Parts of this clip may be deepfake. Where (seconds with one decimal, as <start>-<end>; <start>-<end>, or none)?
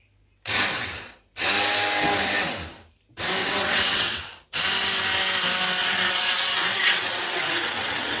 3.4-4.2; 5.8-8.2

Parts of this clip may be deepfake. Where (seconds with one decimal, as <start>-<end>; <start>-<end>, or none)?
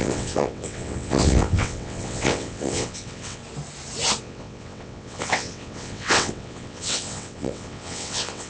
0.0-3.4; 4.2-8.5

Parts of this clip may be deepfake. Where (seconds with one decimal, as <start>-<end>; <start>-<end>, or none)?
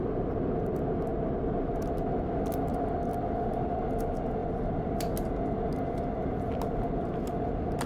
none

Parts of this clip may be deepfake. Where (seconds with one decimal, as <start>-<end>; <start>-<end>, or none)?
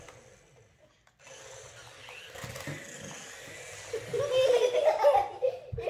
none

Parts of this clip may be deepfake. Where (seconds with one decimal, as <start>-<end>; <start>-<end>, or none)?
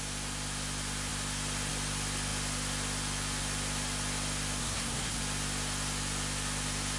4.6-5.2